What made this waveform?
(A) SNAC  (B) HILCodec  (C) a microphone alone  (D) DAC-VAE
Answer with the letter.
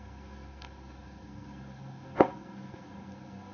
A